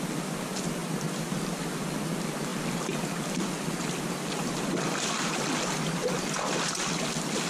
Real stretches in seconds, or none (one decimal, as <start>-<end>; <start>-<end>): 0.0-7.5